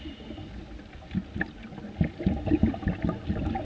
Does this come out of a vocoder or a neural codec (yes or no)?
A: no